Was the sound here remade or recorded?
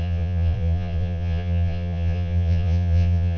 remade